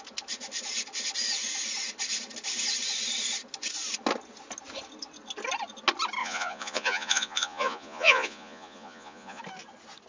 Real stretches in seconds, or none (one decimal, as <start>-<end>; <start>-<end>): 0.0-6.2; 9.4-10.1